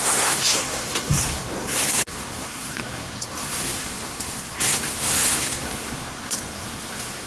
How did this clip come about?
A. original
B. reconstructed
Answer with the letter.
B